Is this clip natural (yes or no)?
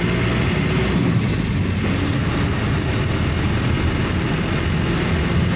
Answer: yes